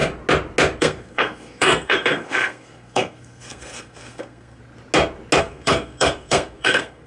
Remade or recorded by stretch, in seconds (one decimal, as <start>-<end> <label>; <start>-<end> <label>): 0.0-0.8 recorded; 0.8-4.6 remade; 4.6-5.4 recorded; 5.4-7.1 remade